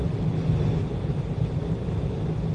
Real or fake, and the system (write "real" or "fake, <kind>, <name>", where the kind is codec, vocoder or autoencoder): real